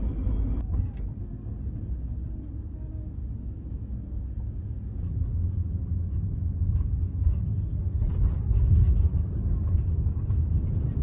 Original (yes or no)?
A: yes